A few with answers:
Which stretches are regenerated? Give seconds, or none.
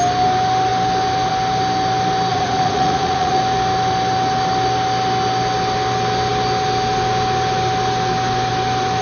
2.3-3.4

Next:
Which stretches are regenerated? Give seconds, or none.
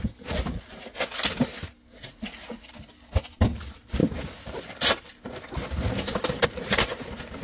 0.5-1.1; 1.9-2.7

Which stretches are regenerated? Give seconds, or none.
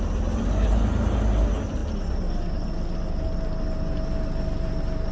none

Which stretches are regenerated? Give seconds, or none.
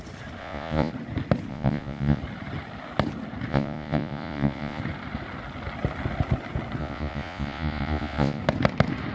0.4-0.9; 1.5-2.2; 3.5-4.8; 6.8-8.4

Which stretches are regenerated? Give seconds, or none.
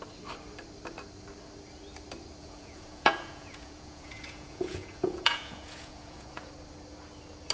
2.4-6.5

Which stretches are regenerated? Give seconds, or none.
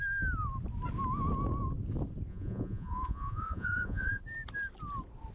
2.3-4.2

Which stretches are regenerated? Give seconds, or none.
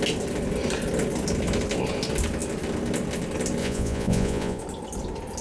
3.6-4.6